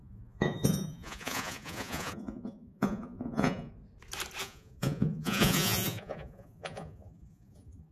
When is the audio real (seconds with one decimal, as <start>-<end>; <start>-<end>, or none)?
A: 3.7-4.4